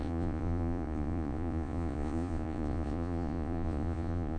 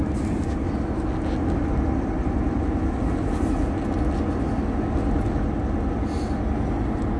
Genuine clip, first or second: second